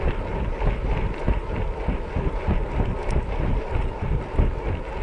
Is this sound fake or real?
real